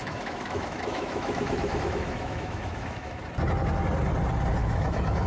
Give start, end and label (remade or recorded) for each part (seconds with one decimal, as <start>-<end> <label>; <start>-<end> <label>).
0.0-3.2 remade; 3.2-4.6 recorded; 4.6-5.3 remade